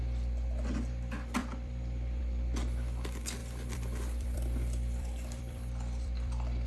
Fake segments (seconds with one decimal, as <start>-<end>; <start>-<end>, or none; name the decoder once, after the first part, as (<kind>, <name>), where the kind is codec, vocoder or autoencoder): 1.4-2.2 (vocoder, BigVGAN v2); 3.4-6.7